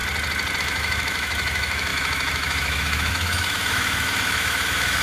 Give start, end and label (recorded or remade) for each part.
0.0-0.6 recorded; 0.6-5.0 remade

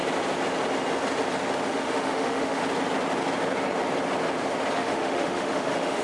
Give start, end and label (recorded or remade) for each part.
0.0-1.7 recorded; 1.7-2.6 remade; 2.6-4.8 recorded; 4.8-6.0 remade

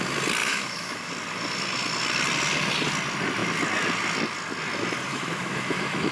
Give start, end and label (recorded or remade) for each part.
0.0-0.4 recorded; 0.4-1.1 remade; 1.1-5.1 recorded; 5.1-6.1 remade

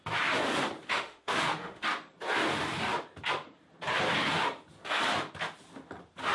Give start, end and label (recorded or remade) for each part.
0.0-0.9 recorded; 0.9-1.8 remade; 1.8-6.3 recorded

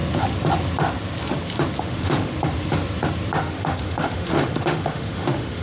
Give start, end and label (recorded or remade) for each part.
0.0-1.8 recorded; 1.8-2.3 remade; 2.3-3.4 recorded; 3.4-5.6 remade

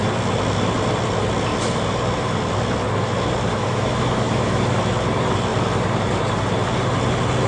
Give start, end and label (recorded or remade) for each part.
0.0-3.5 recorded; 3.5-4.6 remade; 4.6-7.5 recorded

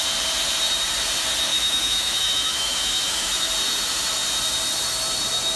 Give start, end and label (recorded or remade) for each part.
0.0-1.5 recorded; 1.5-3.5 remade; 3.5-5.6 recorded